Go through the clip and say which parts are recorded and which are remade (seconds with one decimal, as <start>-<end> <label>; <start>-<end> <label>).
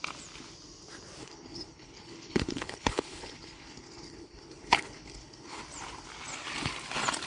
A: 0.0-1.2 recorded; 1.2-5.6 remade; 5.6-7.3 recorded